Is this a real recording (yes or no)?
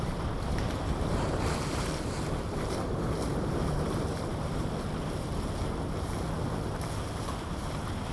no